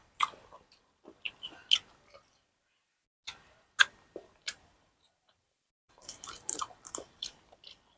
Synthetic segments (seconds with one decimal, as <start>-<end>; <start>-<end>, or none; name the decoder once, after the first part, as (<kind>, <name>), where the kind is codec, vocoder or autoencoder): 4.4-7.3 (vocoder, BigVGAN v2)